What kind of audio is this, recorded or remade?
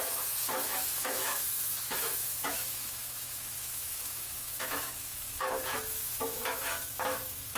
remade